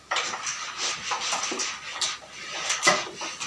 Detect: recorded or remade recorded